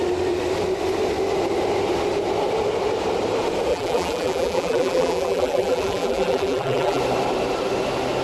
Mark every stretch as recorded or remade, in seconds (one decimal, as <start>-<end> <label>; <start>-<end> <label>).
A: 0.0-3.7 recorded; 3.7-7.0 remade; 7.0-8.2 recorded

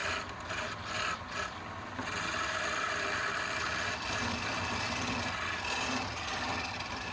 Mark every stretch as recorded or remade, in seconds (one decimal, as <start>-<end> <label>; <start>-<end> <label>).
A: 0.0-7.1 recorded

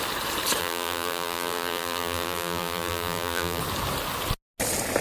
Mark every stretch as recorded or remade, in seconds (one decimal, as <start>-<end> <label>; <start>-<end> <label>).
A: 0.0-0.6 recorded; 0.6-3.6 remade; 3.6-5.0 recorded

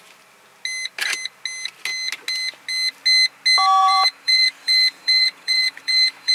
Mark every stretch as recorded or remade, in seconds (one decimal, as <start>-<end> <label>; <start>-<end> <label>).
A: 0.0-3.8 recorded; 3.8-6.3 remade

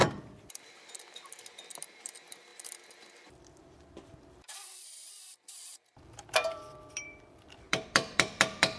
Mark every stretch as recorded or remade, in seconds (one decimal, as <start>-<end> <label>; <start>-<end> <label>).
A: 0.0-8.8 remade

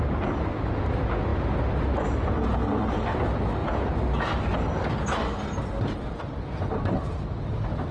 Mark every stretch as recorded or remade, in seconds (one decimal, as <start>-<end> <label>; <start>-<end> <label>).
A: 0.0-7.9 recorded

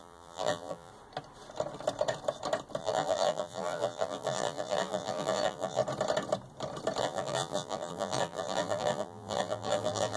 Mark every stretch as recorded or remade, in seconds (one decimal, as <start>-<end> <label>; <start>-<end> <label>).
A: 0.0-0.9 remade; 0.9-2.8 recorded; 2.8-5.8 remade; 5.8-7.0 recorded; 7.0-10.2 remade